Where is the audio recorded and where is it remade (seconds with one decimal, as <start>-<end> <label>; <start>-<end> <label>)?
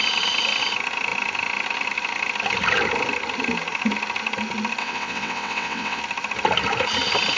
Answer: 0.0-4.8 recorded; 4.8-6.0 remade; 6.0-7.4 recorded